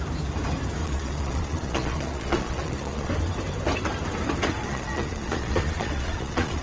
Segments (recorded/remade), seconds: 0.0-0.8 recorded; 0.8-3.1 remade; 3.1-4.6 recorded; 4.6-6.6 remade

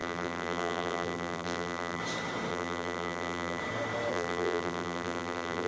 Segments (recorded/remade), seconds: 0.0-2.0 remade; 2.0-2.5 recorded; 2.5-3.6 remade; 3.6-4.1 recorded; 4.1-5.7 remade

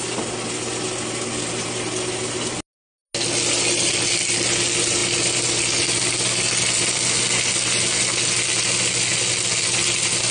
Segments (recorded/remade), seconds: 0.0-10.3 recorded

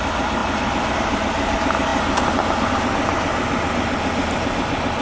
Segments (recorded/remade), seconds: 0.0-5.0 recorded

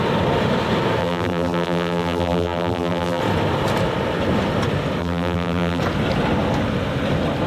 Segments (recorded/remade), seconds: 0.0-1.0 recorded; 1.0-3.2 remade; 3.2-5.0 recorded; 5.0-5.8 remade; 5.8-7.5 recorded

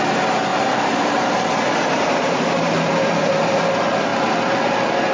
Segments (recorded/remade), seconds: 0.0-0.5 recorded; 0.5-3.6 remade; 3.6-5.1 recorded